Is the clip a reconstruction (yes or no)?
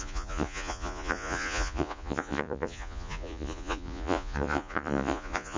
yes